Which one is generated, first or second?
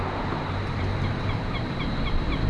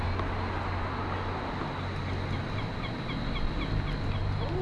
first